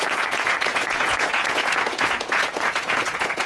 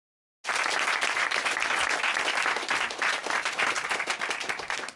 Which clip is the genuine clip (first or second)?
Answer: second